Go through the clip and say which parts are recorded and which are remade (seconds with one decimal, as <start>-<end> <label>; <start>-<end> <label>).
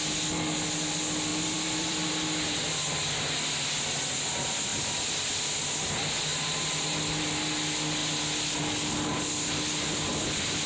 0.0-1.3 recorded; 1.3-2.1 remade; 2.1-10.7 recorded